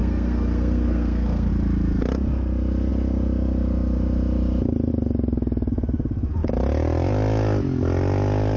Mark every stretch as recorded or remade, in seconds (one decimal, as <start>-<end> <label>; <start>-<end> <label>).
0.0-1.5 remade; 1.5-8.6 recorded